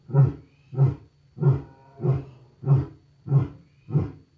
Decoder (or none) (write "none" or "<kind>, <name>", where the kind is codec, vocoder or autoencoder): none